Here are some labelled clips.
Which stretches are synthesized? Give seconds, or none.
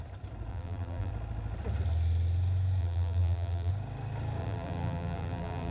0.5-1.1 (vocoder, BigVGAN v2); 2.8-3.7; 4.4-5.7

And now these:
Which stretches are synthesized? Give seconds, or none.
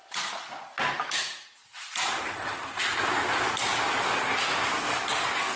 none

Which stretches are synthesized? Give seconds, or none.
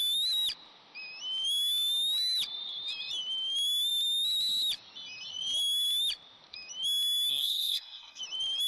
7.3-8.2 (codec, SNAC)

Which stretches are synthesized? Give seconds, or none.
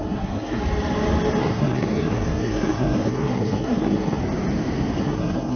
0.0-0.6 (codec, SNAC); 1.4-4.2; 5.0-5.6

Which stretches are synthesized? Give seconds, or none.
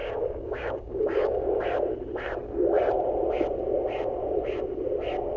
0.0-1.6 (codec, DAC)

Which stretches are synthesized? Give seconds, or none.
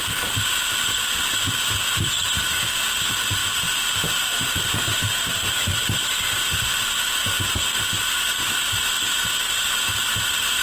3.4-4.7 (vocoder, BigVGAN v2)